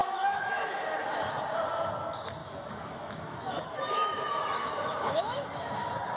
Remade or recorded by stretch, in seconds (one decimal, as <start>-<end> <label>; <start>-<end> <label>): 0.0-0.8 remade; 0.8-2.4 recorded; 2.4-6.2 remade